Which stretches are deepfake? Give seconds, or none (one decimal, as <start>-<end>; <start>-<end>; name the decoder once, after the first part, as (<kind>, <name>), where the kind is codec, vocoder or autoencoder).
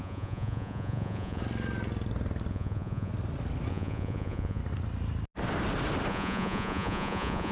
0.0-1.4 (vocoder, Vocos); 2.5-3.1; 3.7-4.6; 6.1-7.5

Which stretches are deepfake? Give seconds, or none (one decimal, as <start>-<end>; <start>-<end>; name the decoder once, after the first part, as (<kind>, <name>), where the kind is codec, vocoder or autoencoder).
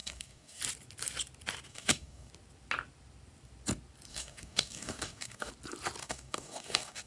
0.0-0.6 (codec, DAC); 1.7-2.3; 4.1-5.5; 6.0-7.1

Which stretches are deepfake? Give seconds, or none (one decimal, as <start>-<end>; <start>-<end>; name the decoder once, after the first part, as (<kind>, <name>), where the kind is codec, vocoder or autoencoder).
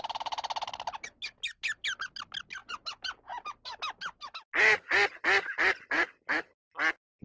none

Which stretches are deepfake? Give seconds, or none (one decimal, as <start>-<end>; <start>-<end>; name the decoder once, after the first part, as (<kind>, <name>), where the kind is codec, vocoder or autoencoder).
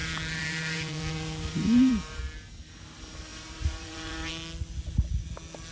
0.0-2.2 (vocoder, BigVGAN v2); 3.3-4.3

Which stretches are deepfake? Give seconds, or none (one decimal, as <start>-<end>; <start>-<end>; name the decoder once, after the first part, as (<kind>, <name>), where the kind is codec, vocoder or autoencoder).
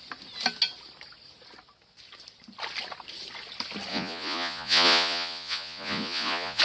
3.9-6.6 (vocoder, Vocos)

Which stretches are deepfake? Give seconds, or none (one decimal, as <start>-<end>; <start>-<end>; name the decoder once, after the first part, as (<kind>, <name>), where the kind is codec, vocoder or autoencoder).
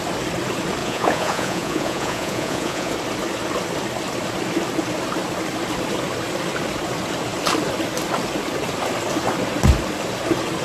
0.8-2.9 (vocoder, Vocos)